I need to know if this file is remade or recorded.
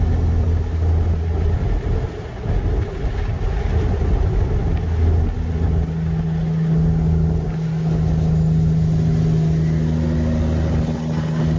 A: recorded